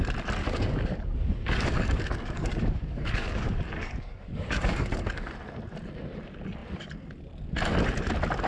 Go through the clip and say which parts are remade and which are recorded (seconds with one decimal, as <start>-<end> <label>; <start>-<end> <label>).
0.0-0.4 recorded; 0.4-5.3 remade; 5.3-8.5 recorded